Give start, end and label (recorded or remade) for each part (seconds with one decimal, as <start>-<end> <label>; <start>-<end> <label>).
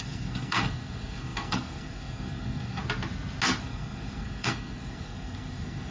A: 0.0-2.8 remade; 2.8-3.6 recorded; 3.6-5.9 remade